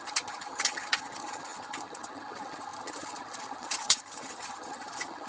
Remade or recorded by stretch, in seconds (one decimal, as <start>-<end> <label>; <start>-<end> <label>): 0.0-5.3 remade